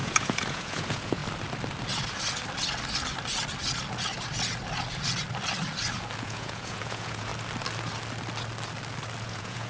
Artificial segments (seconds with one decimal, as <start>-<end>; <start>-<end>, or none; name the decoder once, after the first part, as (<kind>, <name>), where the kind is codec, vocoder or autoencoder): 0.0-1.2 (vocoder, Vocos); 6.2-7.3; 9.2-9.7